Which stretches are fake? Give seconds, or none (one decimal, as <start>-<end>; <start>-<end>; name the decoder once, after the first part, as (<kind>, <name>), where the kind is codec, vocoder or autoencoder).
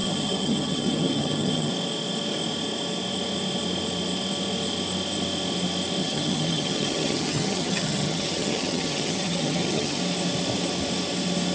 0.0-1.7 (vocoder, HiFi-GAN); 6.0-10.0